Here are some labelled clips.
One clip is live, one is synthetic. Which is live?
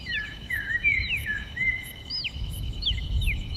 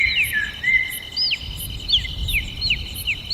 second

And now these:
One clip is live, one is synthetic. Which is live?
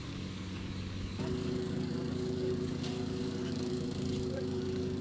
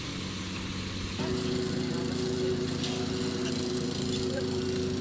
second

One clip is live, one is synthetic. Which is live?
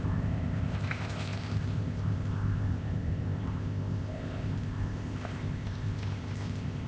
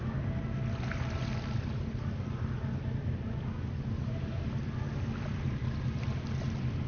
second